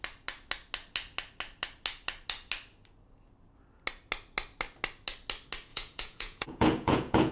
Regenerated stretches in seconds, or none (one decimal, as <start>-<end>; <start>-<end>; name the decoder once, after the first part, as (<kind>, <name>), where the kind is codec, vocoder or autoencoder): 5.7-7.3 (vocoder, Vocos)